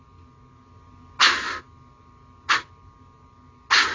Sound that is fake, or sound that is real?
real